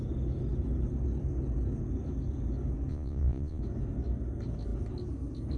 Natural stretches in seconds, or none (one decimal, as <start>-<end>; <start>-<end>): 0.0-2.9; 3.6-5.6